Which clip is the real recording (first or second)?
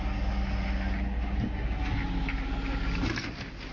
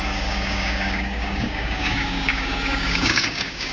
first